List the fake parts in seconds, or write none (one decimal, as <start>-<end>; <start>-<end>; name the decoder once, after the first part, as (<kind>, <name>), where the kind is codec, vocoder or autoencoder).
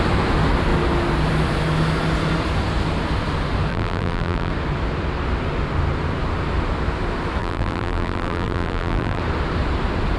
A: 3.7-4.5 (vocoder, BigVGAN v2); 7.4-9.2